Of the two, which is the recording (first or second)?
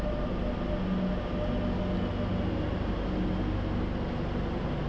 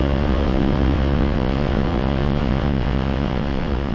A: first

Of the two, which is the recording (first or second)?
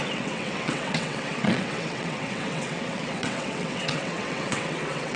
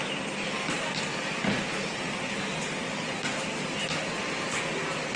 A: second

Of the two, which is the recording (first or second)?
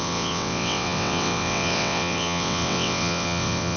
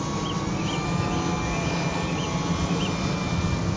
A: second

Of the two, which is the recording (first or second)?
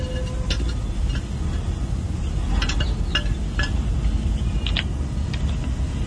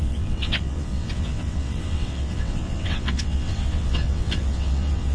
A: first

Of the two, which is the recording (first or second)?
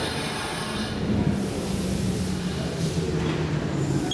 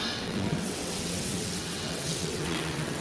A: first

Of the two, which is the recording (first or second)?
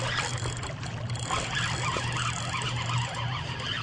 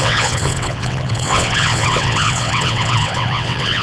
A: first